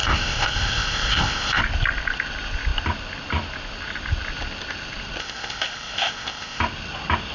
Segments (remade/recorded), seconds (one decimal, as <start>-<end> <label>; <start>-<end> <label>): 0.0-1.6 remade; 1.6-5.2 recorded; 5.2-6.6 remade; 6.6-7.3 recorded